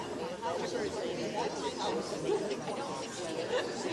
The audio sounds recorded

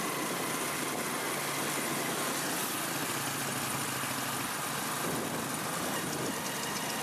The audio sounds recorded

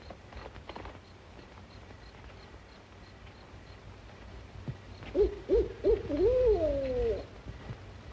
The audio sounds recorded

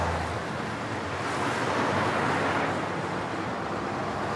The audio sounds recorded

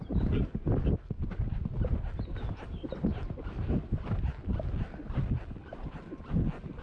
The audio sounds recorded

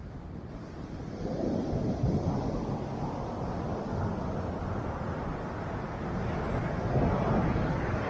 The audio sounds recorded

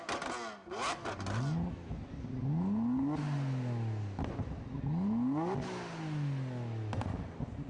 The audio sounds recorded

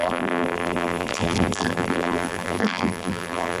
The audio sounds remade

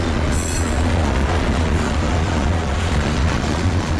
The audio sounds remade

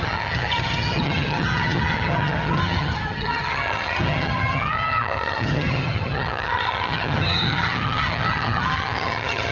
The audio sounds remade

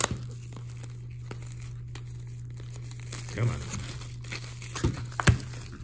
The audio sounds recorded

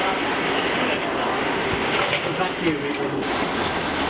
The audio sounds recorded